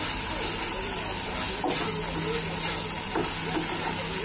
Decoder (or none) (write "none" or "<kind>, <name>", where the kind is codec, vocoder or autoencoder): none